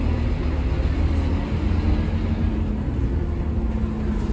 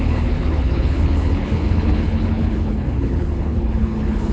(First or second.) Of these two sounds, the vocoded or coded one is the second